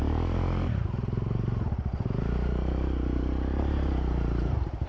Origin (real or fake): fake